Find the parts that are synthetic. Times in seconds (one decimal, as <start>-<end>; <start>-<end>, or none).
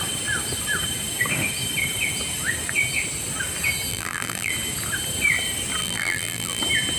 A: 3.9-4.5; 5.8-6.6